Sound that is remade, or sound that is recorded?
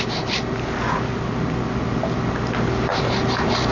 recorded